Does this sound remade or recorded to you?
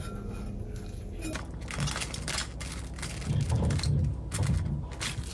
recorded